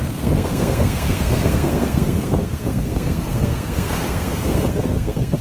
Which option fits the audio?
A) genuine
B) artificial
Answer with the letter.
B